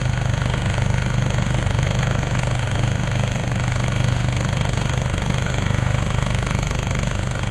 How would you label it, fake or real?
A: fake